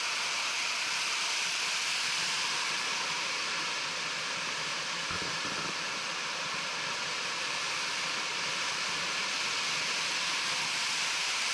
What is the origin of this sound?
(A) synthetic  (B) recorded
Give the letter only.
A